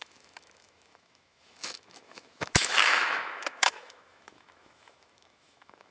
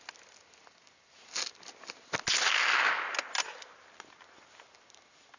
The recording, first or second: second